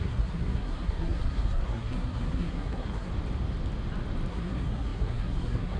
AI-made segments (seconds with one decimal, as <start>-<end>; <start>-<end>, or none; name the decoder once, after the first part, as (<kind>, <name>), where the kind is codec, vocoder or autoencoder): 0.0-3.1 (codec, SNAC); 4.3-5.8